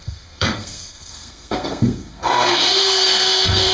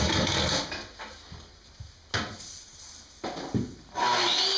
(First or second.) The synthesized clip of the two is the first